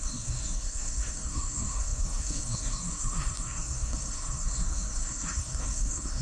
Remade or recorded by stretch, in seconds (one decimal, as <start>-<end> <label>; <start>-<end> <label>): 0.0-6.2 remade